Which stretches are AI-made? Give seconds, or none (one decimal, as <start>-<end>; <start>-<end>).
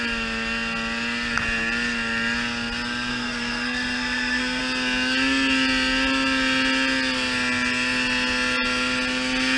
3.1-4.6